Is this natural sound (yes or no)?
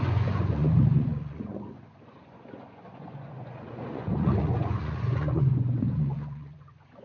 no